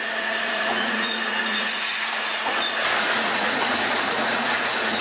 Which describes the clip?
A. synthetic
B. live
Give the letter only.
A